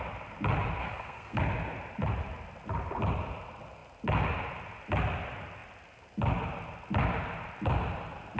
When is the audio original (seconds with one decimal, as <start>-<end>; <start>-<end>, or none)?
0.0-0.8; 1.4-8.4